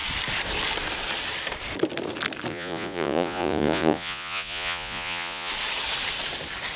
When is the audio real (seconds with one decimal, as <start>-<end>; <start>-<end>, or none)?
0.0-2.5; 5.5-6.8